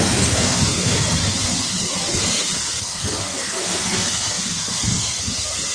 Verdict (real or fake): fake